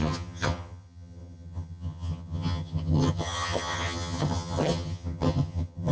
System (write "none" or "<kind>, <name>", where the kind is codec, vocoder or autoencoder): vocoder, HiFi-GAN